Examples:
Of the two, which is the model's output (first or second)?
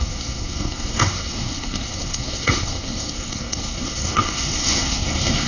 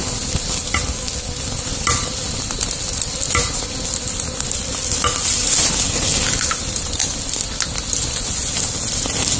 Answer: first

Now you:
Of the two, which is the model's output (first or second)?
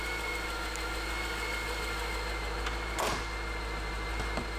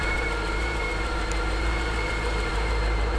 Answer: second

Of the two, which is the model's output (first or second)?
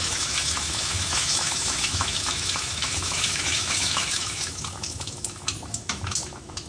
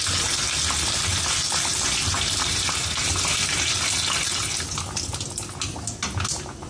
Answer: first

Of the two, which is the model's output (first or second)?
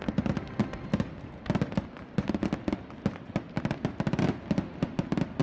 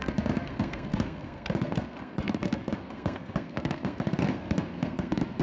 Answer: second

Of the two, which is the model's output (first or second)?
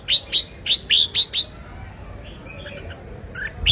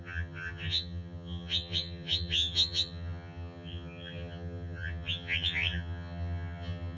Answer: second